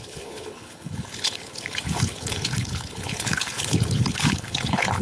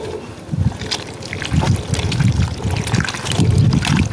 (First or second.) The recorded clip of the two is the second